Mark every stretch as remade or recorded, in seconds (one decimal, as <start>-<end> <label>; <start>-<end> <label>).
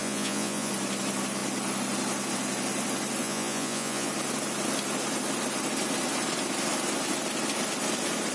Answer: 0.0-0.7 remade; 0.7-3.2 recorded; 3.2-4.1 remade; 4.1-8.3 recorded